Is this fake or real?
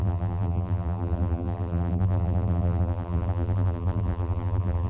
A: fake